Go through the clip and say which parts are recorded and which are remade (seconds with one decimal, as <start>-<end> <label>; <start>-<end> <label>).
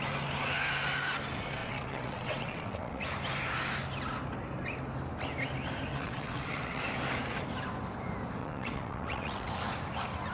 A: 0.0-1.6 recorded; 1.6-3.0 remade; 3.0-5.9 recorded; 5.9-6.8 remade; 6.8-8.4 recorded; 8.4-9.5 remade; 9.5-10.3 recorded